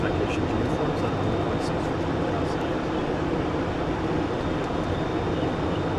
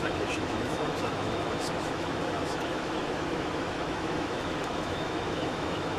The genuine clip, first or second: first